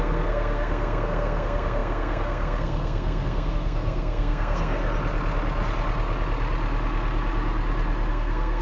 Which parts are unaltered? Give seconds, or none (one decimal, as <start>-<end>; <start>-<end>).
4.8-8.1